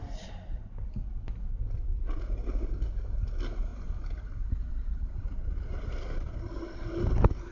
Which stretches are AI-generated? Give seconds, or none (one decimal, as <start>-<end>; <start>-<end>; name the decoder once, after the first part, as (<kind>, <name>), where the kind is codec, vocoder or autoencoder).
none